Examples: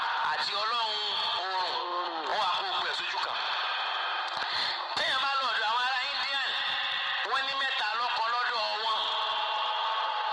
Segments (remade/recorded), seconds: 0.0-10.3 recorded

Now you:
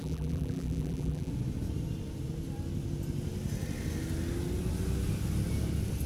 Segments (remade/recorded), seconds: 0.0-1.3 remade; 1.3-6.1 recorded

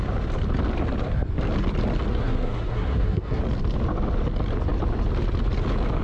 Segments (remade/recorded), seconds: 0.0-2.1 recorded; 2.1-3.4 remade; 3.4-6.0 recorded

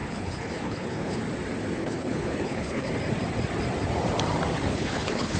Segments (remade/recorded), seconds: 0.0-1.2 remade; 1.2-1.8 recorded; 1.8-2.9 remade; 2.9-4.7 recorded; 4.7-5.4 remade

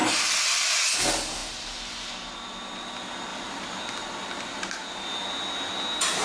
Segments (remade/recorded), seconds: 0.0-3.3 recorded; 3.3-3.8 remade; 3.8-6.2 recorded